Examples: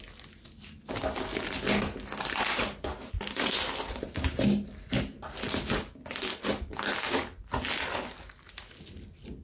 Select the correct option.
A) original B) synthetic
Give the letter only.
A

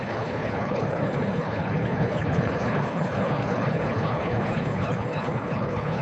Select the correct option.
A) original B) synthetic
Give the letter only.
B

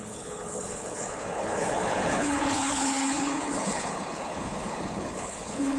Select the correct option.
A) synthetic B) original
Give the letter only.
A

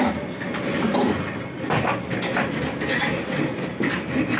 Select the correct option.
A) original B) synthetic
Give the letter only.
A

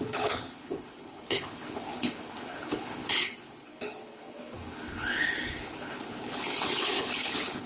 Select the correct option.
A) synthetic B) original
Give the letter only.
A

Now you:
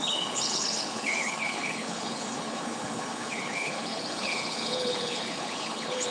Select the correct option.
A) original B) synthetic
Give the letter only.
B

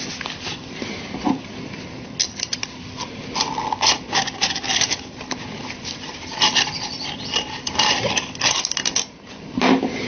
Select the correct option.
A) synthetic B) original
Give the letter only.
B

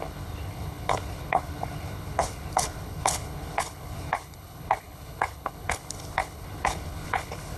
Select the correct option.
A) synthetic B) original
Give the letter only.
A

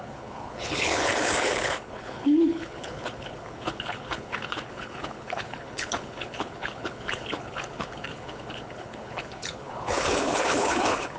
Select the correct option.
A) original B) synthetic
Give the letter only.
B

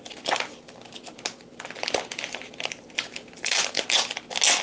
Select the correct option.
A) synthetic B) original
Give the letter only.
B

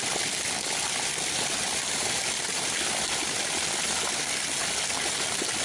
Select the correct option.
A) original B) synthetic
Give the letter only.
A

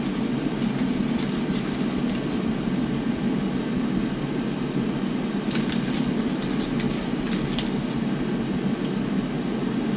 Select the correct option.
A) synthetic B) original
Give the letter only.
B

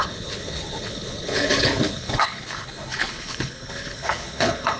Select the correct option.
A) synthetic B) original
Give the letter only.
A